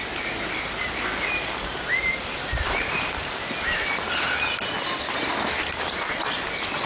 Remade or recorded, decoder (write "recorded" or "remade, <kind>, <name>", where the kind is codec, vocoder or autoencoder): recorded